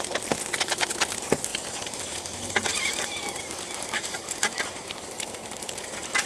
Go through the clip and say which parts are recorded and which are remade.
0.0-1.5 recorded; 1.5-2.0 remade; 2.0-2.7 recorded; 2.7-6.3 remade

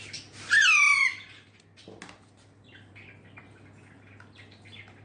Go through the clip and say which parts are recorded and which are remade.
0.0-5.0 recorded

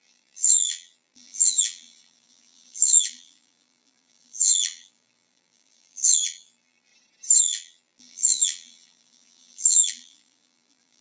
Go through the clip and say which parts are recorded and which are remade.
0.0-6.9 remade; 6.9-7.4 recorded; 7.4-11.0 remade